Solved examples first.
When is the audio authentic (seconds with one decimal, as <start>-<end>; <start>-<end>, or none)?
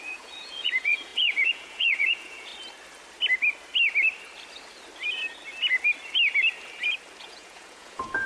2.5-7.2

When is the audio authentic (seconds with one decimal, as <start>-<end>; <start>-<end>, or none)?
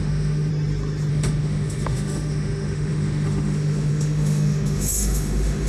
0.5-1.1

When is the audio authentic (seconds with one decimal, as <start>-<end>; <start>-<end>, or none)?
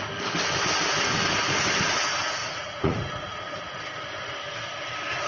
0.0-2.4; 3.6-5.3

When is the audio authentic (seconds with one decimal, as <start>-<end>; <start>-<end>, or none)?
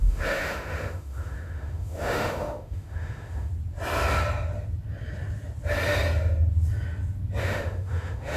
3.5-7.4